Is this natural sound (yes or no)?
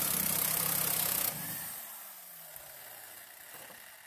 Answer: yes